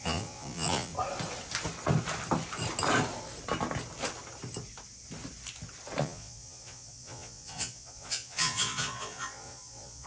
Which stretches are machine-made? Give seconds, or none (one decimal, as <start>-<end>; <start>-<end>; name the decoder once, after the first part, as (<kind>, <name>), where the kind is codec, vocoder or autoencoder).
0.0-0.9 (vocoder, Vocos); 6.0-10.1